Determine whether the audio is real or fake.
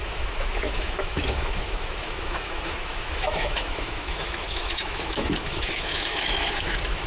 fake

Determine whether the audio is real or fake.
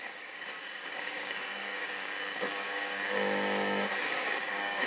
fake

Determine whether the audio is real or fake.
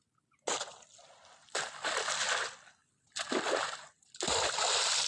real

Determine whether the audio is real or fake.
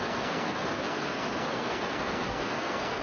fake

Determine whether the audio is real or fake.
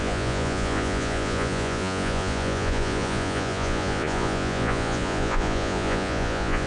fake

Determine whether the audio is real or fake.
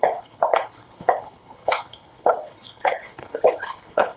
fake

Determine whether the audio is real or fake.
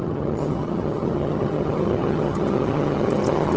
fake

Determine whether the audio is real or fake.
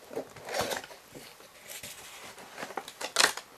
real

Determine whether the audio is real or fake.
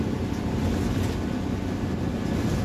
real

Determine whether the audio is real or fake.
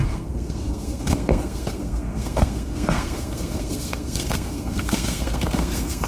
fake